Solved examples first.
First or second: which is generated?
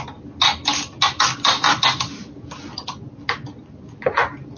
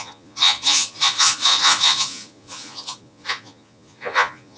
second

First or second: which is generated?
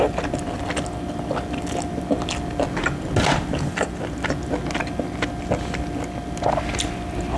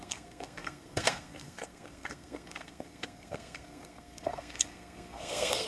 second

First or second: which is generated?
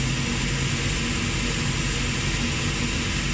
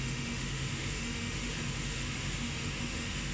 second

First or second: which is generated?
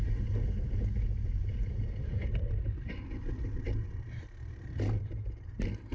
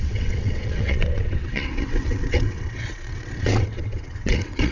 second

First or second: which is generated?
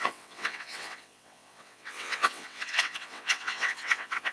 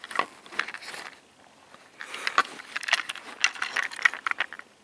first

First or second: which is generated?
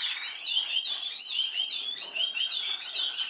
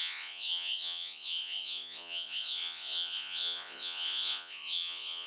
second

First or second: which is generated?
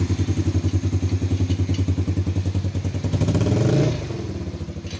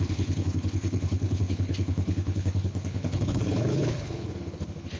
second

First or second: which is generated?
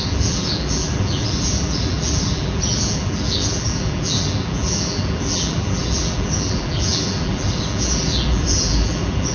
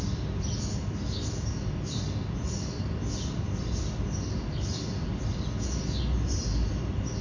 first